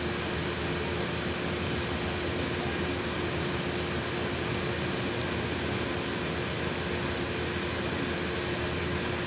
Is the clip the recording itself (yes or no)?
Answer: yes